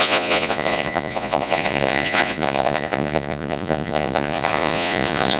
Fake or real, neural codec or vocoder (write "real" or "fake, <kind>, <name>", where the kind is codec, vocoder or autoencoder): fake, vocoder, Vocos